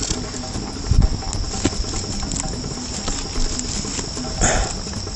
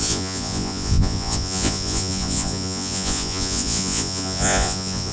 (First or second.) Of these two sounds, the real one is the first